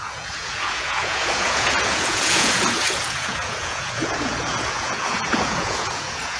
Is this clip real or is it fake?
fake